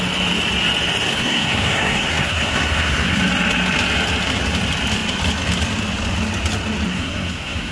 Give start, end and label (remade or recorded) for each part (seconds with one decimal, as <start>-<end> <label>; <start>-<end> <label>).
0.0-1.1 recorded; 1.1-3.2 remade; 3.2-6.9 recorded; 6.9-7.7 remade